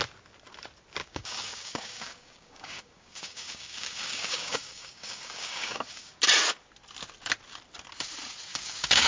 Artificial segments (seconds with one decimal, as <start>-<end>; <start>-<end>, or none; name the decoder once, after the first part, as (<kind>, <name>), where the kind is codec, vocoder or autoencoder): 1.0-6.2 (codec, DAC); 8.5-9.1